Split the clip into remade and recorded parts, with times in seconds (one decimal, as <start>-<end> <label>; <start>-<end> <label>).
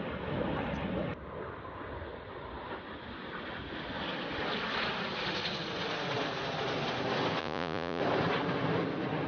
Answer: 0.0-7.4 recorded; 7.4-8.0 remade; 8.0-9.3 recorded